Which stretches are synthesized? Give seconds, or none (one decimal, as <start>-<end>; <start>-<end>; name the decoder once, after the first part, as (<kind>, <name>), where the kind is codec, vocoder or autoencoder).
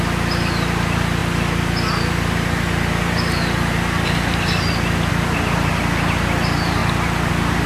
none